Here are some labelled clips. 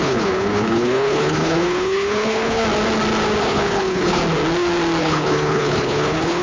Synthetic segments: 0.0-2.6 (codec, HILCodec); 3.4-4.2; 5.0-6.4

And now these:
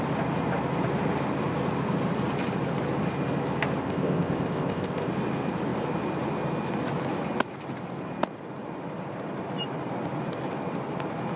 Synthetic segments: 3.8-5.1 (codec, ZipCodec)

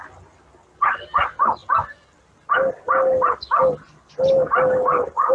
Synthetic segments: none

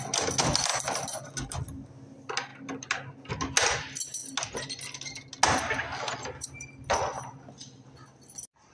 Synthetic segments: none

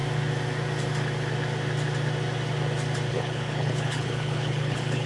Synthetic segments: 3.1-5.1 (codec, HILCodec)

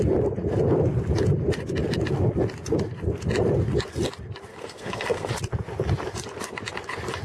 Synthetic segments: 4.5-5.3 (codec, SNAC)